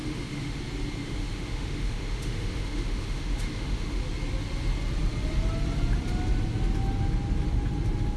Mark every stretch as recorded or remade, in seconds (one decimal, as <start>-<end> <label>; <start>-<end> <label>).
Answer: 0.0-0.6 remade; 0.6-1.0 recorded; 1.0-4.0 remade; 4.0-8.2 recorded